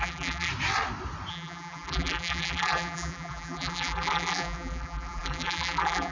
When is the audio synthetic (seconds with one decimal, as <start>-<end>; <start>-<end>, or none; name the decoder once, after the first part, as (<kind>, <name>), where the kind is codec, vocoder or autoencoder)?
0.0-0.5 (vocoder, BigVGAN v2); 1.3-6.1